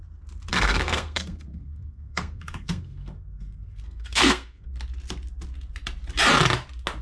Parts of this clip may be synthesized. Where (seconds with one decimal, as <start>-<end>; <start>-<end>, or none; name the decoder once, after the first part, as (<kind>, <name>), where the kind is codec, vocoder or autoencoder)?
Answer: 0.5-4.7 (codec, SNAC)